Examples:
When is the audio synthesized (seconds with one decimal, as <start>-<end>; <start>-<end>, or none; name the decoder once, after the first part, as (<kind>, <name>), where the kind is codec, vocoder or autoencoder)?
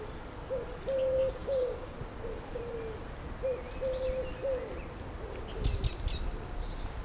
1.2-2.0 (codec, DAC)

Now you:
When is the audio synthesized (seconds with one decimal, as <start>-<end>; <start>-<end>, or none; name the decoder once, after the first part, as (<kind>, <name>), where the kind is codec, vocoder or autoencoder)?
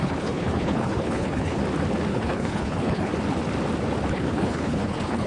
0.0-1.6 (codec, HILCodec); 2.1-3.1; 4.1-5.3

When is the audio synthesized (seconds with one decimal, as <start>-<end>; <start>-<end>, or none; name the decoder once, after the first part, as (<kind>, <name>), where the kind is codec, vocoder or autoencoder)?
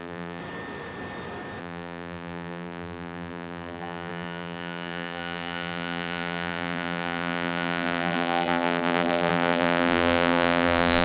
0.0-0.4 (vocoder, BigVGAN v2); 1.6-11.0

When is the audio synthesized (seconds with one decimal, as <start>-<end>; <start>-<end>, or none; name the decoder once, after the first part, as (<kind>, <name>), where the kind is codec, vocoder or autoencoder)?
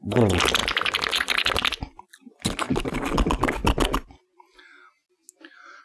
none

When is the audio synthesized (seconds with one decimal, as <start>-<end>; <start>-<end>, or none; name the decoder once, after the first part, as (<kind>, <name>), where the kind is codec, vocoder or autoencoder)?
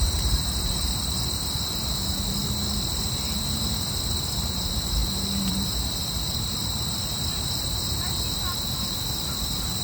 0.0-9.8 (vocoder, BigVGAN v2)